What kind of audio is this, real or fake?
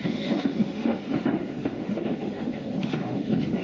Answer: fake